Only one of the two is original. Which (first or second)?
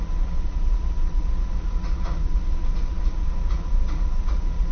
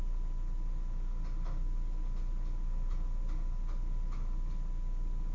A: second